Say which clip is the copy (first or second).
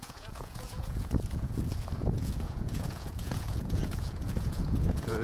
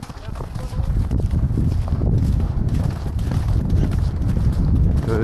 first